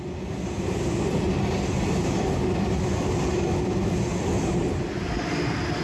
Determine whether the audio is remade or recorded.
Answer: recorded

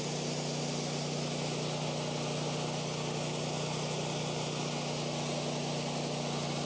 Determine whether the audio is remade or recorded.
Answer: recorded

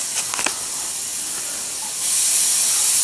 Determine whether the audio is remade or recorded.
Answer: recorded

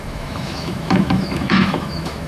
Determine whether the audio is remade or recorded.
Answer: remade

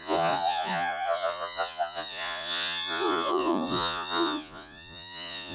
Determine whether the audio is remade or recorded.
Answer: remade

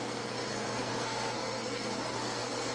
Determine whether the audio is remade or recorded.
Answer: remade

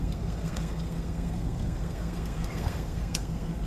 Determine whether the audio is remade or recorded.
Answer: remade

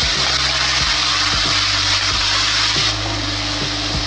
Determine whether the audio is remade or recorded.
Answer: recorded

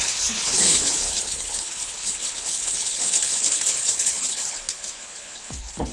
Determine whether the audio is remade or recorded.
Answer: remade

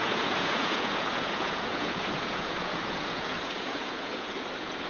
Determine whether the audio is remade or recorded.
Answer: remade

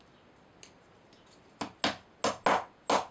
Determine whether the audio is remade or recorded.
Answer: recorded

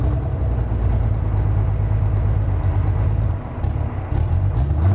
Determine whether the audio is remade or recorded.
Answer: recorded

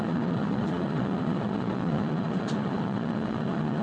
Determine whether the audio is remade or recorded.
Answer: remade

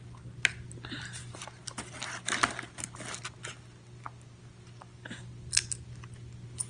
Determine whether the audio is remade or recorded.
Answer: recorded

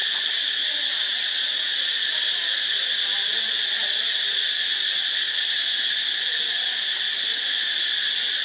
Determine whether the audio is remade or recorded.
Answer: recorded